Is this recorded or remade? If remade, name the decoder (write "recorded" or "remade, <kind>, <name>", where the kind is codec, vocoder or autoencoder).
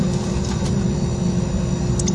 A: remade, vocoder, BigVGAN v2